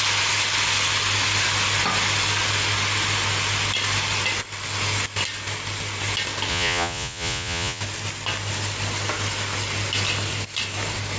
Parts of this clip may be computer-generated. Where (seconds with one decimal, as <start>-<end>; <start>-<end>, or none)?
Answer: 6.5-7.8